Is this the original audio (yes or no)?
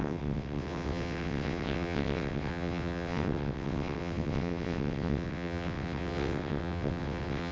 no